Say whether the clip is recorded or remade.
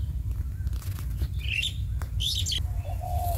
recorded